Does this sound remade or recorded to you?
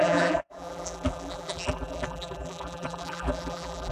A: remade